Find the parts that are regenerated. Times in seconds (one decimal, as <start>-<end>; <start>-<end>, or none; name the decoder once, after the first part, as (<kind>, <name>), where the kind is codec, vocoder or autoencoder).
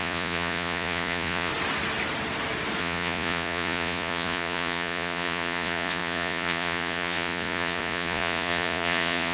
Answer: 0.0-1.5 (vocoder, Vocos); 2.8-9.3